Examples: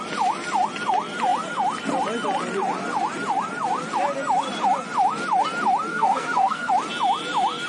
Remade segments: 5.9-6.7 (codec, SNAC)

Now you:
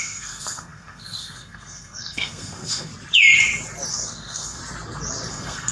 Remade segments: 0.0-2.9 (codec, SNAC); 3.9-4.6; 5.3-5.7

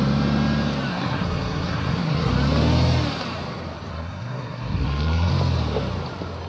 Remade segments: 0.9-2.3 (codec, SNAC); 3.9-5.3

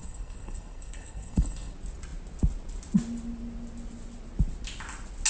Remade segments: 0.0-1.7 (codec, SNAC)